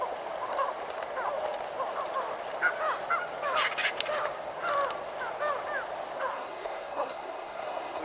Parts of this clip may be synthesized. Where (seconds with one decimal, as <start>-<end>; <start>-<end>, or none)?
6.3-8.0